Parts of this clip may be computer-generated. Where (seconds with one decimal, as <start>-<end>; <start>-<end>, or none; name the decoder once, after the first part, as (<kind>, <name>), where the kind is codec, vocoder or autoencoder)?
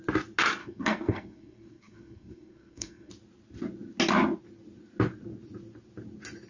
0.6-3.1 (codec, SNAC)